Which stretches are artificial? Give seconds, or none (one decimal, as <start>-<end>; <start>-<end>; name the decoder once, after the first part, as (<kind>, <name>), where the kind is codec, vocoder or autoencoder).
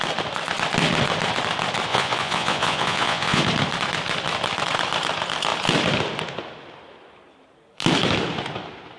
1.9-3.4 (vocoder, Vocos)